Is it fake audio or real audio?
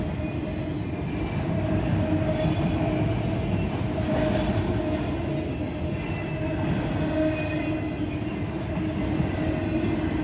real